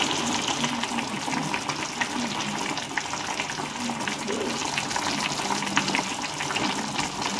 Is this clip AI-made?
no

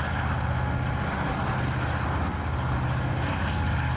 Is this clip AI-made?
no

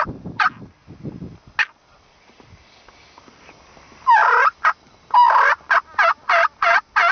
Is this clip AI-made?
no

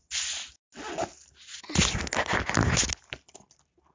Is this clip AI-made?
no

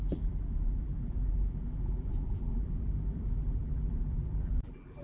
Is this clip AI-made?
yes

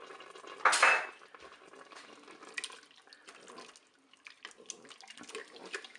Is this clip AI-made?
no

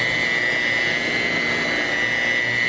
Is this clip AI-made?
no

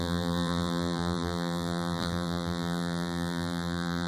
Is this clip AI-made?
yes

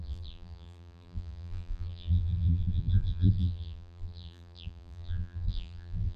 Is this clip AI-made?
yes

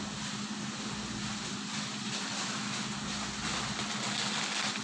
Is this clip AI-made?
no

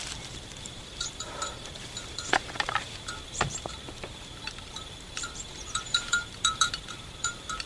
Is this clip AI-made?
yes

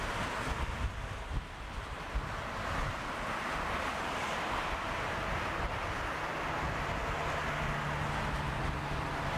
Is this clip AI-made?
no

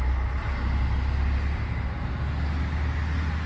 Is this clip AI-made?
no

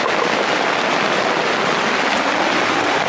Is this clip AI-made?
no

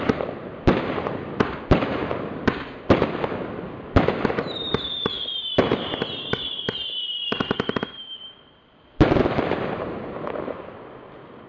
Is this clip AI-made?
yes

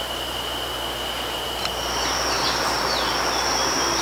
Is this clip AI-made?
yes